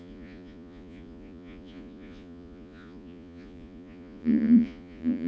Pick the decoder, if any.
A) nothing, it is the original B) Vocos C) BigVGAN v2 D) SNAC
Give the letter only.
B